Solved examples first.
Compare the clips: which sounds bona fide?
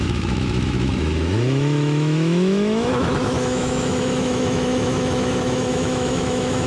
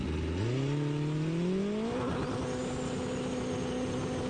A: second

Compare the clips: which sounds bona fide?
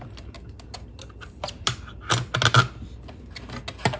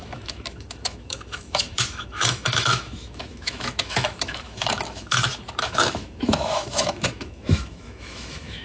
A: first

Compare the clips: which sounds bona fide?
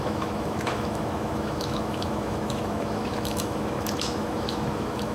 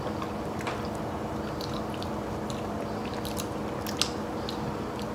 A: second